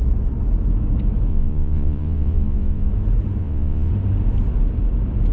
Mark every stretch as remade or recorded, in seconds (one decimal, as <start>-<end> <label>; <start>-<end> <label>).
0.0-1.3 recorded; 1.3-2.9 remade; 2.9-3.4 recorded; 3.4-3.9 remade; 3.9-5.3 recorded